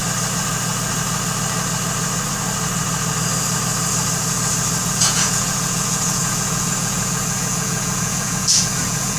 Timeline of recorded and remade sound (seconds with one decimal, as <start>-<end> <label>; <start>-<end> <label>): 0.0-4.8 recorded; 4.8-9.2 remade